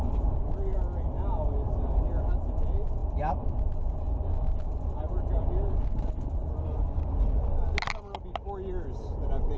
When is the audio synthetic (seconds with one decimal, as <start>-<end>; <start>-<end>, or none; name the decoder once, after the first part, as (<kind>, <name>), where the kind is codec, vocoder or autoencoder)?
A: none